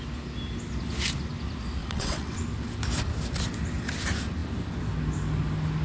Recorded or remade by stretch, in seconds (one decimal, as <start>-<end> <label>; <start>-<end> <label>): 0.0-1.8 recorded; 1.8-2.4 remade; 2.4-5.8 recorded